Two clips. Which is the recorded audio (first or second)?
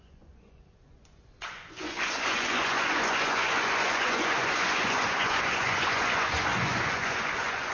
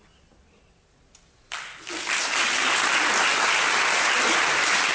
second